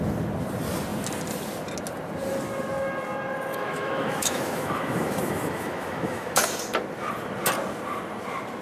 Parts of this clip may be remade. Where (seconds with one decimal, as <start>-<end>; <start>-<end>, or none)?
3.5-6.4